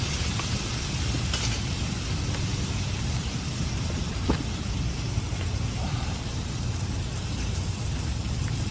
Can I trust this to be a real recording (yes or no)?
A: yes